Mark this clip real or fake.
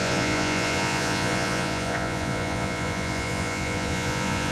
fake